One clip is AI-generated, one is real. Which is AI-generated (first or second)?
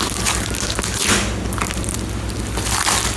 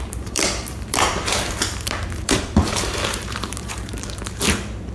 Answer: second